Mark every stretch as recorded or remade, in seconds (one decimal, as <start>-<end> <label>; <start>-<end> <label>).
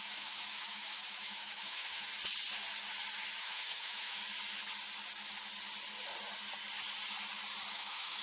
0.0-2.1 remade; 2.1-3.4 recorded; 3.4-4.2 remade; 4.2-7.7 recorded; 7.7-8.2 remade